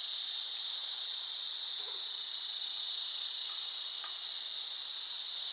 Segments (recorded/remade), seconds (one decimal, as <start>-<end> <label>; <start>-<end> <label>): 0.0-5.5 recorded